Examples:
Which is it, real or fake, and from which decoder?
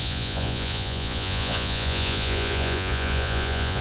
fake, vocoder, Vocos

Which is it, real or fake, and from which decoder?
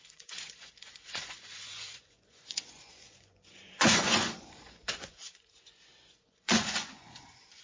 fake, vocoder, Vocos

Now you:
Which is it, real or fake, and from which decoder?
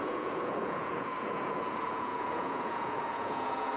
fake, vocoder, Vocos